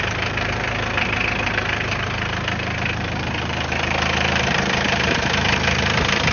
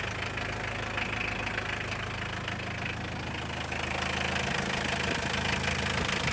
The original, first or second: second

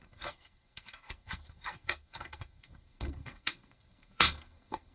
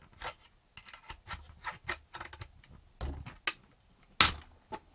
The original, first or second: second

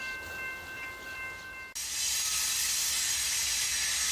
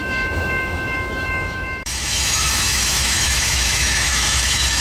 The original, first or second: first